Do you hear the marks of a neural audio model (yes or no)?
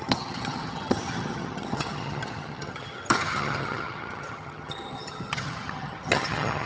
yes